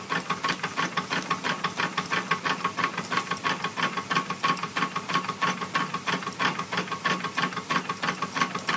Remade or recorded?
recorded